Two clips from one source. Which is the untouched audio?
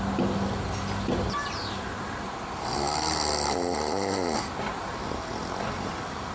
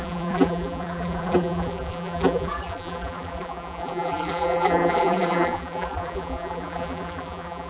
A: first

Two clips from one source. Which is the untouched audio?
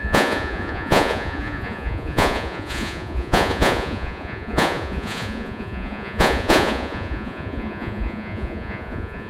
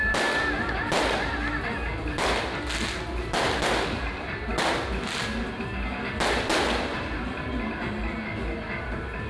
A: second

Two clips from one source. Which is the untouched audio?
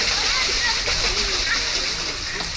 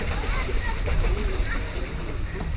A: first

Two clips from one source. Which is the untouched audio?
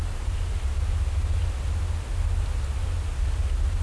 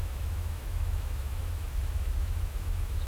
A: first